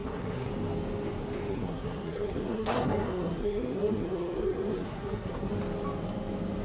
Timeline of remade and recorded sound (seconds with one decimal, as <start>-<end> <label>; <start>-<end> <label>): 0.0-0.5 remade; 0.5-1.5 recorded; 1.5-5.5 remade; 5.5-6.6 recorded